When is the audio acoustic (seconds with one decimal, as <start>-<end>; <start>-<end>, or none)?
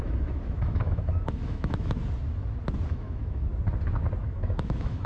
2.0-2.9; 3.5-4.2